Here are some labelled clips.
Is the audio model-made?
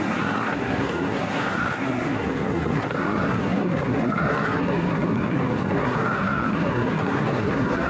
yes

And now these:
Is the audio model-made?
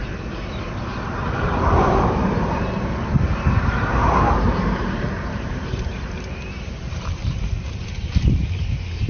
yes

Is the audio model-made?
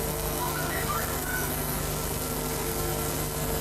yes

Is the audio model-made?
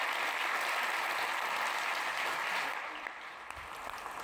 no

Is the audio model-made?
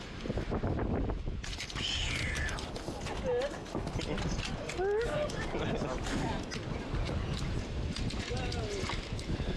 no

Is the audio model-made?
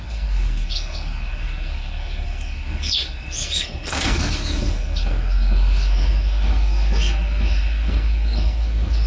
yes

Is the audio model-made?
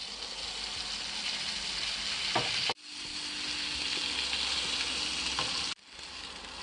no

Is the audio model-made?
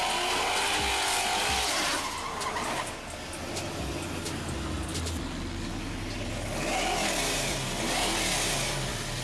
no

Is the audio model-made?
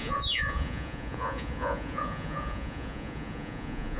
yes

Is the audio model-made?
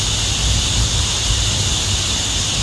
no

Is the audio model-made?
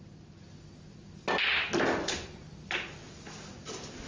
no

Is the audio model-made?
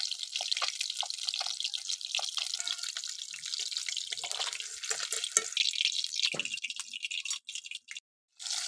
no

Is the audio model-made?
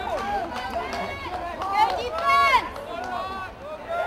no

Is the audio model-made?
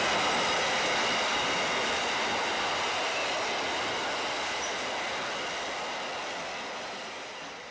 no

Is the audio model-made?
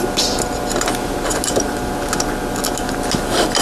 no